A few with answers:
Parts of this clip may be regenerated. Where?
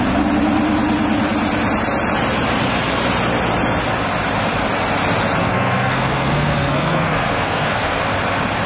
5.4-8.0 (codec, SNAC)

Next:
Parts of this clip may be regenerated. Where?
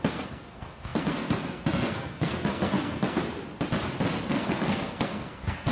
0.0-3.2 (codec, SNAC); 4.3-5.7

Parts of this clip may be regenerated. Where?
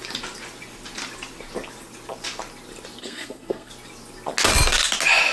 3.0-3.7 (codec, SNAC)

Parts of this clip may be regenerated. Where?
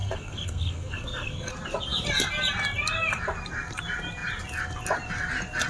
0.0-1.5 (codec, SNAC)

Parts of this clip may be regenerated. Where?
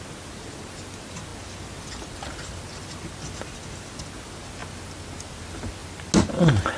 none